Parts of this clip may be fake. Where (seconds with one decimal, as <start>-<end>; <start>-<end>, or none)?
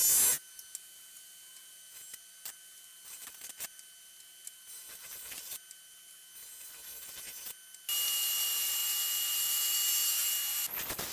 none